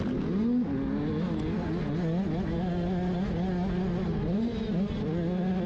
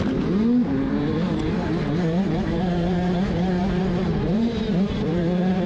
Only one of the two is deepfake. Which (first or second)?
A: second